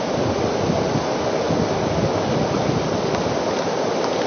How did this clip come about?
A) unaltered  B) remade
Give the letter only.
A